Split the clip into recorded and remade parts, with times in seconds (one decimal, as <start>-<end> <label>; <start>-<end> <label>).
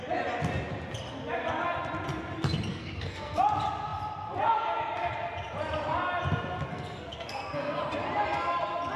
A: 0.0-2.7 recorded; 2.7-3.4 remade; 3.4-6.7 recorded; 6.7-7.8 remade; 7.8-9.0 recorded